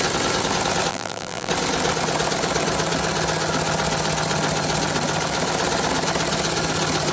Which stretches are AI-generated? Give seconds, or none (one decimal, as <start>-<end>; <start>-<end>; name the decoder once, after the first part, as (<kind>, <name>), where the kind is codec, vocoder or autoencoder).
0.9-1.5 (vocoder, BigVGAN v2)